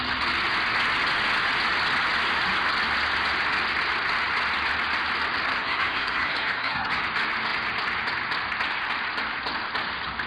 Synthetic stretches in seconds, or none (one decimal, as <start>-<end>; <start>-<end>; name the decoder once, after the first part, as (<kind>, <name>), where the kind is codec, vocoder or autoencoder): 5.5-7.0 (codec, SNAC)